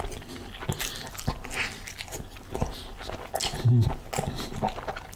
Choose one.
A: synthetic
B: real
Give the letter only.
B